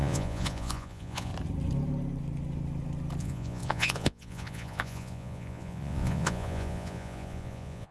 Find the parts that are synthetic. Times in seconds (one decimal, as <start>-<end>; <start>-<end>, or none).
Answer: 0.0-1.3; 3.2-7.9